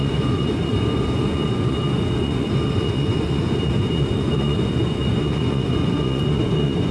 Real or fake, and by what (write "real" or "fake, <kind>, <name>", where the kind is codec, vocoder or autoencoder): fake, vocoder, Vocos